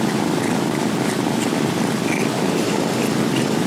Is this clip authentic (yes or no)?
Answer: yes